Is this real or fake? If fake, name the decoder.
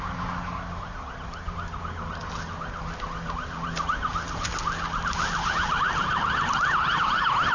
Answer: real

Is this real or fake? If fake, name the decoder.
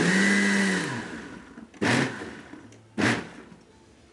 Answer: real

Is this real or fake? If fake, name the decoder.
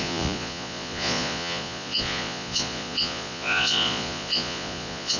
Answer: fake, vocoder, Vocos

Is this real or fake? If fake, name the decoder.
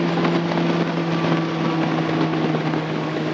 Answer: real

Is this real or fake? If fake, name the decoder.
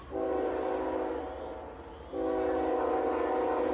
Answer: real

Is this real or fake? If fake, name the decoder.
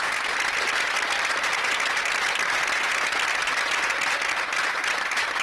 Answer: real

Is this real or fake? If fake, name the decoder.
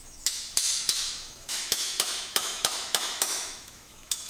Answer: fake, autoencoder, DAC-VAE